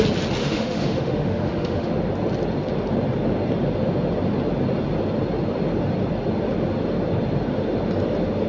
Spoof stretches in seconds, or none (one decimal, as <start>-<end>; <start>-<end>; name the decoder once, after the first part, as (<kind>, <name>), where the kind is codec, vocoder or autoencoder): 0.4-1.9 (autoencoder, DAC-VAE)